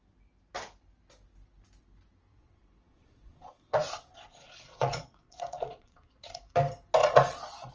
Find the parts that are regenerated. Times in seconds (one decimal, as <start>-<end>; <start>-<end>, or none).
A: 2.3-6.5; 7.0-7.7

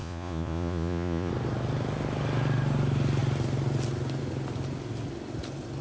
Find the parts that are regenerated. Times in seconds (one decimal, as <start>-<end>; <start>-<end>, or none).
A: 0.0-1.3

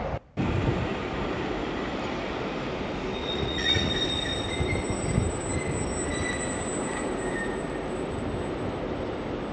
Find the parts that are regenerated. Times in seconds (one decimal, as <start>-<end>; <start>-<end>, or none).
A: 3.2-3.9

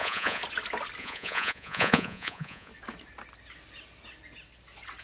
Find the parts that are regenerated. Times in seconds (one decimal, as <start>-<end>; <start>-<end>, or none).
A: 0.0-0.4; 1.0-2.7

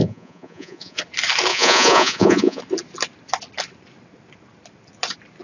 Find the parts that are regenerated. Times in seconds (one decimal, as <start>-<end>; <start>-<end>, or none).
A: 0.0-1.0; 1.5-2.6

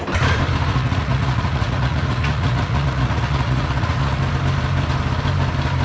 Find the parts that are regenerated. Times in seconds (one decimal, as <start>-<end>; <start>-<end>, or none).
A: 0.7-4.2

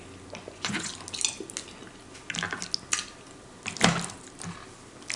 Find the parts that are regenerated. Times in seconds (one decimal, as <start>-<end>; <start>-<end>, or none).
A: 0.4-0.9